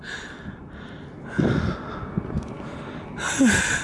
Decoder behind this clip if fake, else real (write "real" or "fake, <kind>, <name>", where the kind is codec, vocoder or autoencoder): real